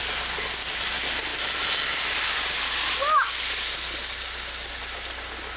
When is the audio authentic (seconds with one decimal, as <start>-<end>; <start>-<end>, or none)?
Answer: 0.0-5.6